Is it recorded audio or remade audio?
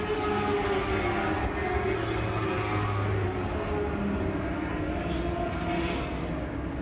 recorded